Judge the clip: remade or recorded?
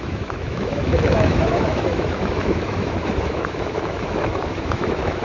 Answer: remade